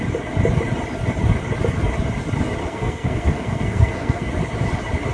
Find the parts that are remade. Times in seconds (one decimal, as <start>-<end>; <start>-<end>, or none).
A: 2.6-4.3